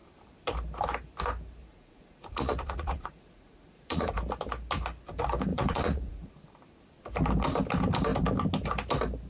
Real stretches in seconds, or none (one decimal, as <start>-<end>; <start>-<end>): 0.0-1.6; 4.2-5.5; 6.3-9.3